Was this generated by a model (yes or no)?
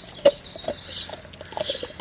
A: no